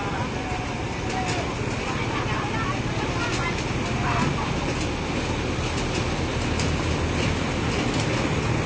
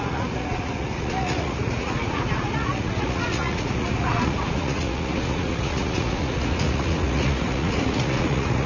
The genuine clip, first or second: first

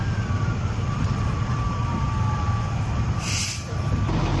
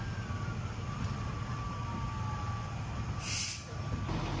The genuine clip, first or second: second